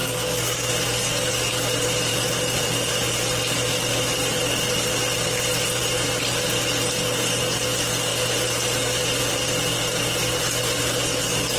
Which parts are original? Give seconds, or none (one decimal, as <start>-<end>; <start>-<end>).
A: 0.7-11.6